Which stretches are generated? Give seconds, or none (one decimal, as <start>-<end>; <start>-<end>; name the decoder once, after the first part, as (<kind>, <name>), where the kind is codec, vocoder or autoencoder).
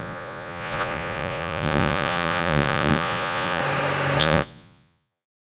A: 0.0-3.6 (vocoder, Vocos); 4.2-5.4